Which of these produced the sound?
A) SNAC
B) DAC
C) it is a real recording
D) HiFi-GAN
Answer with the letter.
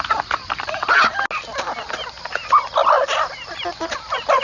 C